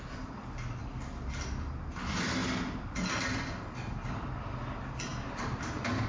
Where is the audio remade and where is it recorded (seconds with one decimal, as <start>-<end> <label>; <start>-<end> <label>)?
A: 0.0-5.1 recorded; 5.1-6.1 remade